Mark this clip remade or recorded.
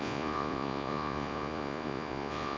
remade